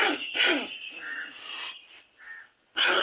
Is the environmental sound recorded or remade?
recorded